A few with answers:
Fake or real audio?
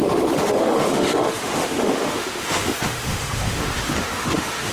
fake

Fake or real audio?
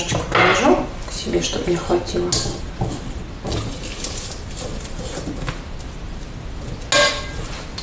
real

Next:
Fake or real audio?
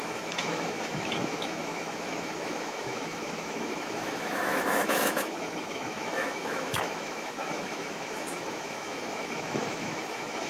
fake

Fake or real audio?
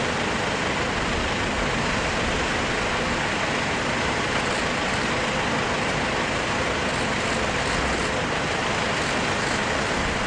real